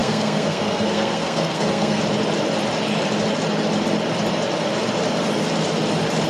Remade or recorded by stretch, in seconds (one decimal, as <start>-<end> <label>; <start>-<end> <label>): 0.0-2.0 remade; 2.0-6.3 recorded